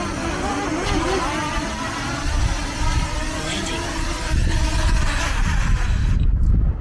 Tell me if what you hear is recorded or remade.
recorded